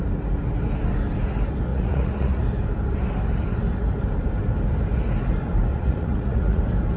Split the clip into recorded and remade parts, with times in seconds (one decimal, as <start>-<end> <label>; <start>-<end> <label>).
0.0-1.7 recorded; 1.7-2.4 remade; 2.4-5.7 recorded; 5.7-6.6 remade; 6.6-7.0 recorded